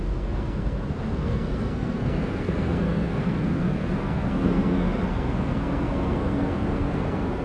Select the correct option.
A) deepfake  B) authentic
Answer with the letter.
A